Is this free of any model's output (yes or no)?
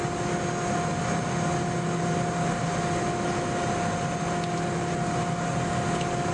yes